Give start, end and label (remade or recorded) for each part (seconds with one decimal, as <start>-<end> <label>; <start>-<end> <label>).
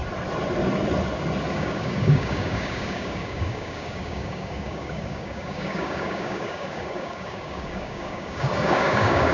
0.0-1.5 recorded; 1.5-9.3 remade